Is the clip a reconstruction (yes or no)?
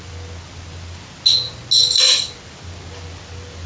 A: no